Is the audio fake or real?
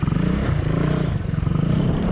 fake